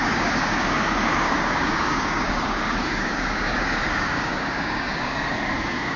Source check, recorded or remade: remade